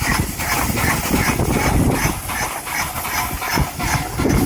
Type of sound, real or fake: real